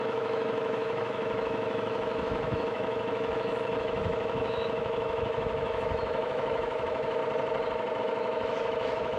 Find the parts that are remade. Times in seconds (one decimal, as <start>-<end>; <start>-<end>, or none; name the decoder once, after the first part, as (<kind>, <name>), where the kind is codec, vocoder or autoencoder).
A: 0.0-7.2 (autoencoder, DAC-VAE); 8.0-9.2